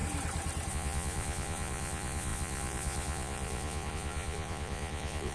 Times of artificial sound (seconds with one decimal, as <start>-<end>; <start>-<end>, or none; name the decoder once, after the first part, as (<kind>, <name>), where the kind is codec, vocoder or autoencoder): 0.7-5.3 (vocoder, Vocos)

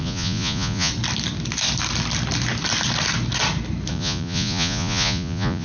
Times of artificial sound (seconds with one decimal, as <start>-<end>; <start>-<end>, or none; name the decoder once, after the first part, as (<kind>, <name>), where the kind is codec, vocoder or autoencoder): 0.0-0.9 (vocoder, Vocos); 3.9-5.6

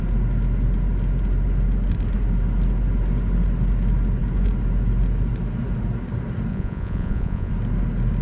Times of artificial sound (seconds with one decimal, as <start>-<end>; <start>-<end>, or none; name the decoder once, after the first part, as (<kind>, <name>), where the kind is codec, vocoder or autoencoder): 6.5-7.5 (vocoder, Vocos)

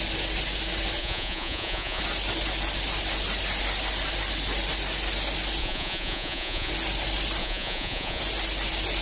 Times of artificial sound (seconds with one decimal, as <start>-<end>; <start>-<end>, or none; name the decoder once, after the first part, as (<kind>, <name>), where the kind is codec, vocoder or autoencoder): 1.0-2.0 (vocoder, Vocos); 5.6-6.7; 7.4-8.2